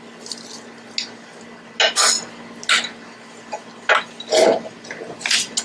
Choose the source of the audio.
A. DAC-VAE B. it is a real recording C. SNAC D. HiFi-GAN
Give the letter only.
B